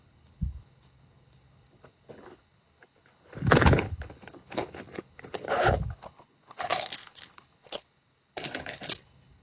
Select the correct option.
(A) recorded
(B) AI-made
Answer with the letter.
B